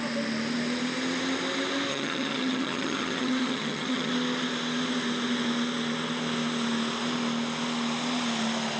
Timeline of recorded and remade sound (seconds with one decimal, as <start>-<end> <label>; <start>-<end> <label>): 0.0-1.9 recorded; 1.9-4.1 remade; 4.1-8.8 recorded